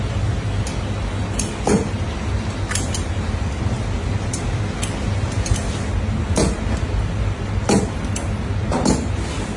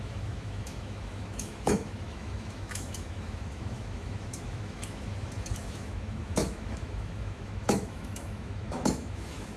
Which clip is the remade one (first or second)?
second